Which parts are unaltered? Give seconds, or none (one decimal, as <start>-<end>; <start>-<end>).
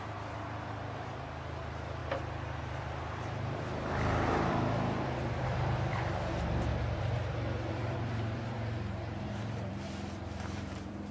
2.0-2.6; 6.7-7.7